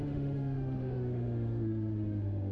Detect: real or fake fake